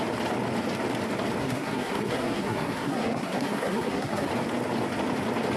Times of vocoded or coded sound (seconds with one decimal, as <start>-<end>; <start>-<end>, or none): 1.4-4.3